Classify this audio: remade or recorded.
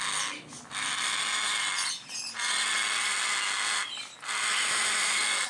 recorded